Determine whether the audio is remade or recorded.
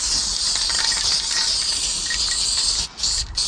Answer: recorded